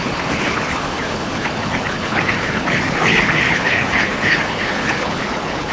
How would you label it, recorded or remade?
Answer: remade